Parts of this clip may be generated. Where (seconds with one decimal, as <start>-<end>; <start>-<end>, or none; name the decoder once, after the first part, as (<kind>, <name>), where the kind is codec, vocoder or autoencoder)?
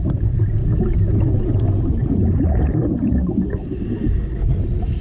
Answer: 0.6-1.8 (autoencoder, DAC-VAE)